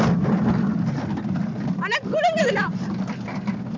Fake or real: real